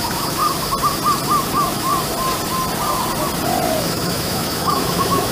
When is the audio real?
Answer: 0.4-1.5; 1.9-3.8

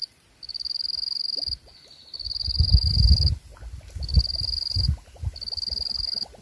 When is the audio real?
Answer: 0.0-6.4

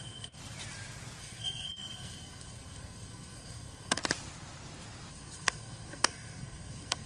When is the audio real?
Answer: 0.4-1.2; 4.0-5.1

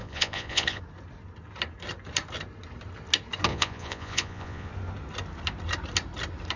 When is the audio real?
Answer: 0.8-3.5; 4.7-6.6

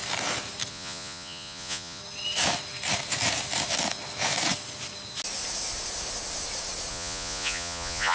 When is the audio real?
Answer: 0.0-0.7; 2.0-6.9

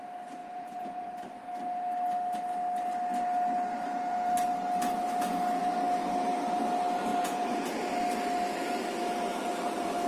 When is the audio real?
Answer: 0.0-0.4; 1.1-7.1; 7.7-10.1